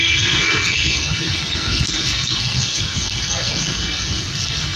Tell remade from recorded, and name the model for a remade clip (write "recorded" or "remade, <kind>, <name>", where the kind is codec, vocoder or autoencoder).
remade, codec, SNAC